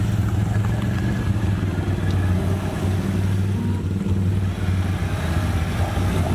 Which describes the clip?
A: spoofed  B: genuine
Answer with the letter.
B